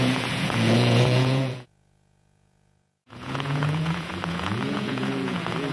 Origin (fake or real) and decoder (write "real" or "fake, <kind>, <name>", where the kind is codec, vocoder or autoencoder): fake, vocoder, Vocos